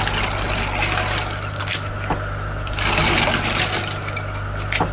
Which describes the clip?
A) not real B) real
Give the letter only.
B